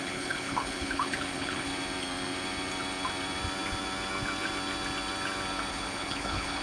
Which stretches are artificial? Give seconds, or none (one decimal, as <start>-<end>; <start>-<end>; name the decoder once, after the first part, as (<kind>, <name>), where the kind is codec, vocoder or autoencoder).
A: 0.0-1.7 (codec, HILCodec); 5.7-6.6